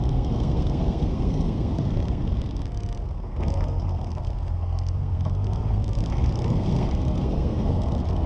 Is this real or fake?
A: fake